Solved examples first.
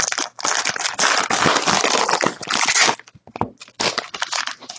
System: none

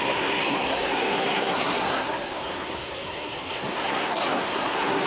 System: codec, SNAC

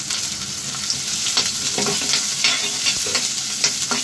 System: none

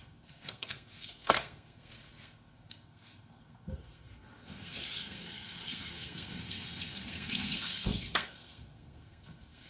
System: codec, SNAC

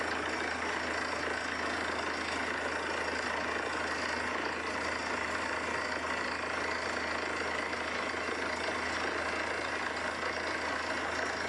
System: none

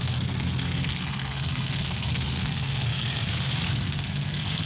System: codec, SNAC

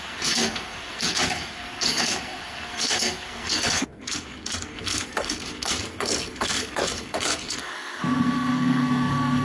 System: codec, SNAC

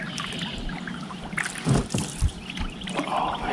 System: none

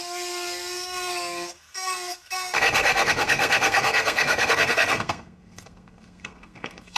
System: codec, SNAC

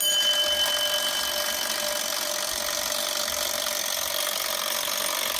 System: none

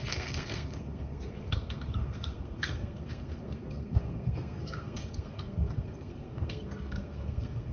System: codec, SNAC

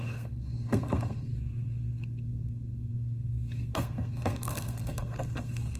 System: codec, SNAC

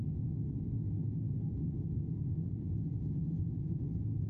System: none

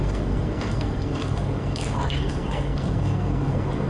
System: codec, SNAC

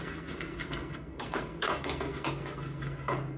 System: codec, SNAC